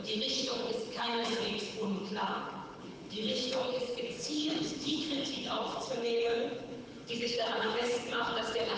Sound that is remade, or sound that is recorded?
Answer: remade